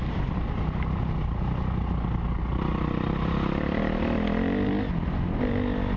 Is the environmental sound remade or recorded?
recorded